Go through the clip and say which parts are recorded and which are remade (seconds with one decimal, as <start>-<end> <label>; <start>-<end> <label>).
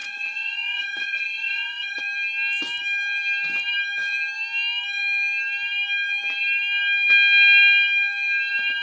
0.0-2.0 remade; 2.0-8.8 recorded